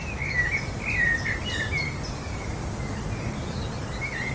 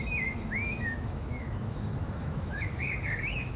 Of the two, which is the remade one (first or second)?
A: second